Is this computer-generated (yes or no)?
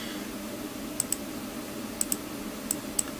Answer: no